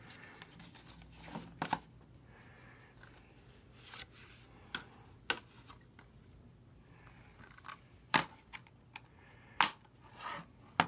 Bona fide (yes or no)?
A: yes